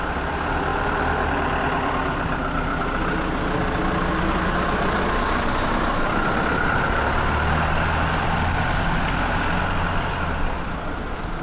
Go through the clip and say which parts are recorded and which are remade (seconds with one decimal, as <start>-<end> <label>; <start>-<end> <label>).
0.0-11.4 recorded